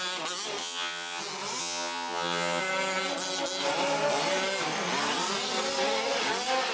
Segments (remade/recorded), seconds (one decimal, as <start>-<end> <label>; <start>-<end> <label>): 0.0-0.6 recorded; 0.6-1.2 remade; 1.2-1.6 recorded; 1.6-2.6 remade; 2.6-6.7 recorded